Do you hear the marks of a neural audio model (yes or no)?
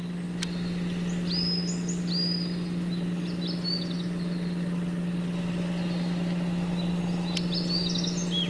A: no